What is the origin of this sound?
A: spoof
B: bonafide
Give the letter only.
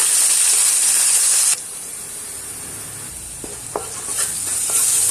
B